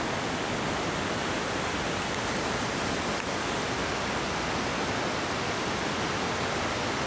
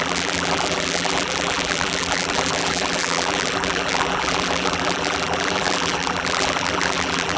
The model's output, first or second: second